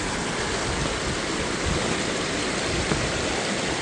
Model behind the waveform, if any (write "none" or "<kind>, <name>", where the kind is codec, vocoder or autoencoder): none